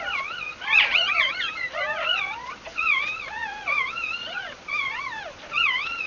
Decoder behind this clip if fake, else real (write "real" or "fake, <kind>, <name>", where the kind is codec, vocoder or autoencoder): fake, vocoder, Vocos